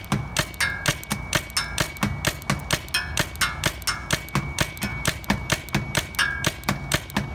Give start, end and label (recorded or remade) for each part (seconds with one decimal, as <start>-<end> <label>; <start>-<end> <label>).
0.0-4.9 recorded; 4.9-5.5 remade; 5.5-7.3 recorded